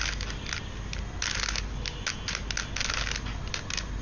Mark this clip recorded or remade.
recorded